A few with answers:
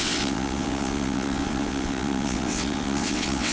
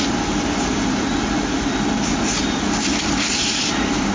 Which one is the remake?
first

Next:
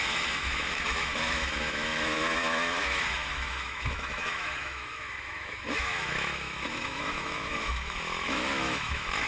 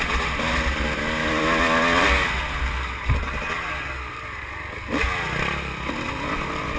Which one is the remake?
first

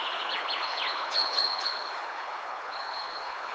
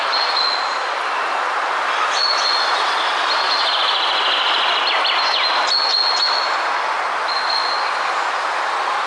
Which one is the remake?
first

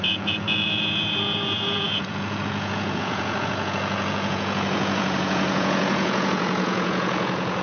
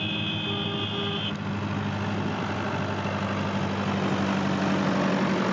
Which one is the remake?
first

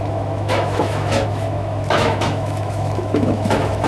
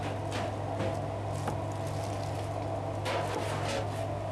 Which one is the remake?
first